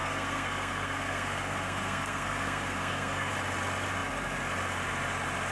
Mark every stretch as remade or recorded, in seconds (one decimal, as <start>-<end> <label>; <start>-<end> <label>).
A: 0.0-3.3 remade; 3.3-5.5 recorded